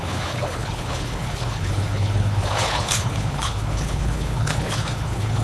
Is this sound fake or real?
fake